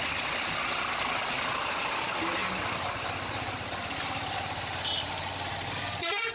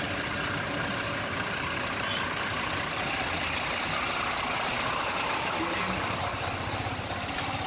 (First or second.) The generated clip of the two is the second